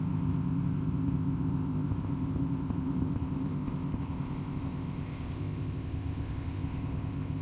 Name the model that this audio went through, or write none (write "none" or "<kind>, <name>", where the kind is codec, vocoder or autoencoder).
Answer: codec, ZipCodec